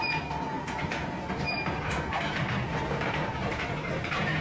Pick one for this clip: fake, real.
real